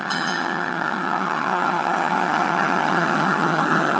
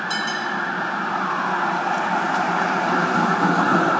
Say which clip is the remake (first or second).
first